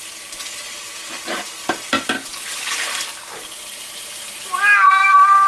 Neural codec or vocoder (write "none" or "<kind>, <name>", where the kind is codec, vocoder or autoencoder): vocoder, BigVGAN v2